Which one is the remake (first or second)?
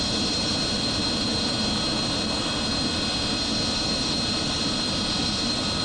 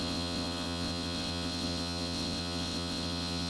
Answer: second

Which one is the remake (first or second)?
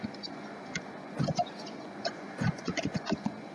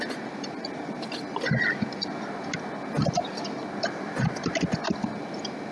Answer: first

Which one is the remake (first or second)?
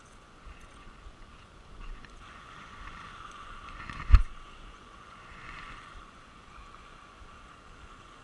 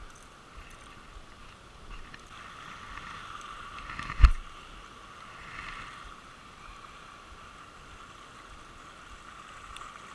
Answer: first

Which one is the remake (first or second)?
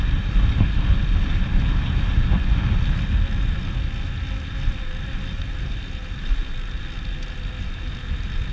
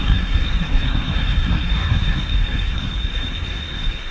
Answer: second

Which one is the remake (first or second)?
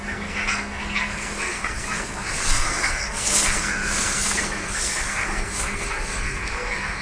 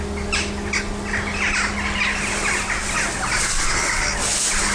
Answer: first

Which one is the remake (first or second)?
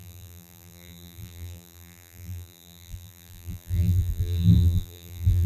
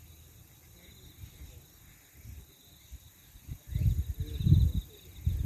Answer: first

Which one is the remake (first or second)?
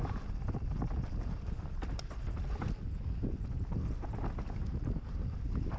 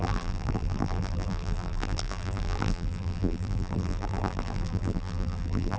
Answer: second